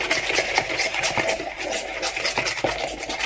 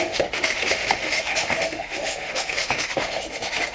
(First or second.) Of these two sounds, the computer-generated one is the second